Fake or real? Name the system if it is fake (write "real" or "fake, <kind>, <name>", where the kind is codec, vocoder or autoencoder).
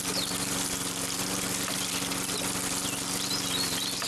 real